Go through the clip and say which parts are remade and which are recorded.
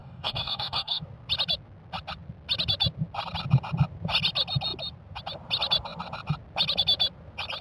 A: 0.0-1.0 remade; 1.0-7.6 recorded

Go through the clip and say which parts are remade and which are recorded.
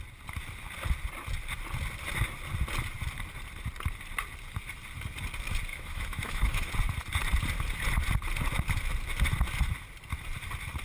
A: 0.0-5.7 recorded; 5.7-6.7 remade; 6.7-10.8 recorded